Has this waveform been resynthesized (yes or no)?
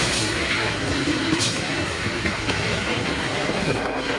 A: yes